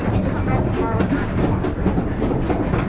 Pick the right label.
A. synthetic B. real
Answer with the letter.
B